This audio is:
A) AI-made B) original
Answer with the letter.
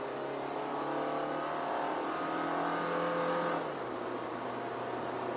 B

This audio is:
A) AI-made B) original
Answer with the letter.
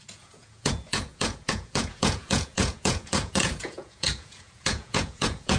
A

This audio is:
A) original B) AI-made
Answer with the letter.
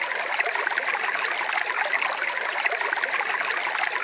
A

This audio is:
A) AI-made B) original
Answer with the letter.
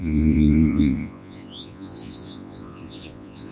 A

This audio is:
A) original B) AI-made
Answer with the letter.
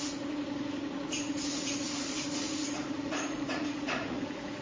B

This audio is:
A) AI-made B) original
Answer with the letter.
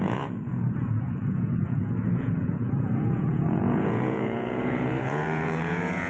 A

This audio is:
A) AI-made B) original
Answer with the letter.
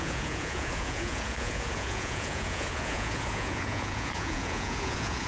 A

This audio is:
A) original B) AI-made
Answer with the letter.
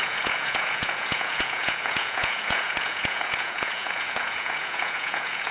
B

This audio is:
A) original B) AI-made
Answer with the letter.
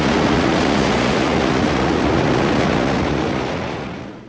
B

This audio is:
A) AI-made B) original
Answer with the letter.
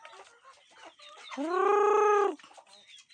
B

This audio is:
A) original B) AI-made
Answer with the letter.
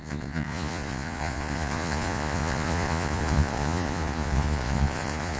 B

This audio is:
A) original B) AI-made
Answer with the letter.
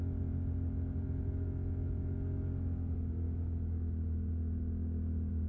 A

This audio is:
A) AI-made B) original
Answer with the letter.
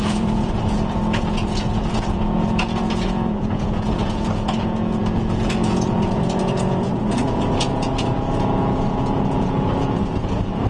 A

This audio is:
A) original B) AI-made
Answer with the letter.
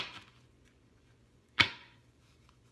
B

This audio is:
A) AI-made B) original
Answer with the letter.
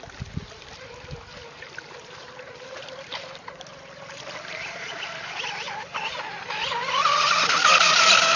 B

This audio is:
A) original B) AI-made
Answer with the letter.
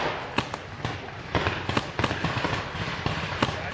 A